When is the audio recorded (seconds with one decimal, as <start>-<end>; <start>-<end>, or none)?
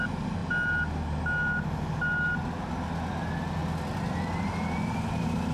0.0-5.5